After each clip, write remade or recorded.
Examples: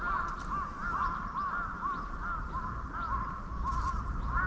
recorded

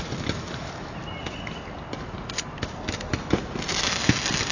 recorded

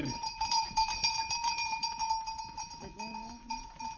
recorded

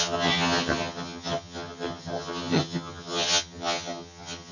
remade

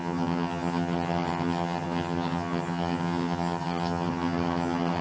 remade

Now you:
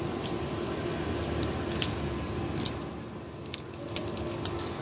recorded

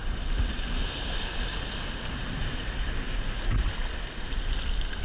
recorded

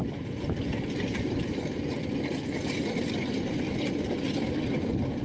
recorded